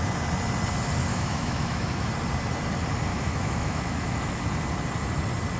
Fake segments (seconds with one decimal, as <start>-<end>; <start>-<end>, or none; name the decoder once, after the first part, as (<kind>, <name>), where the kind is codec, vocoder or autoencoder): 1.1-2.1 (autoencoder, DAC-VAE); 3.1-4.4